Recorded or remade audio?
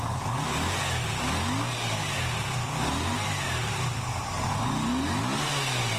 recorded